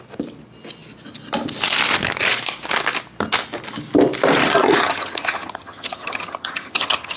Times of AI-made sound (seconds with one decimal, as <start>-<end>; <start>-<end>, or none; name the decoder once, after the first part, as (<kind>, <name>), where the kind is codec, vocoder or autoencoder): 4.4-7.2 (vocoder, HiFi-GAN)